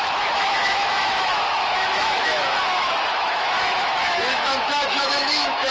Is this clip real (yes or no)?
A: no